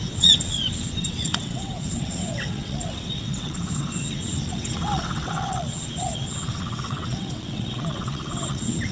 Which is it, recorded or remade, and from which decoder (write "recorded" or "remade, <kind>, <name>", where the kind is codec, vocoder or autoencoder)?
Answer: remade, vocoder, WaveNeXt